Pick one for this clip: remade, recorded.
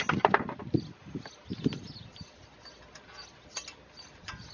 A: recorded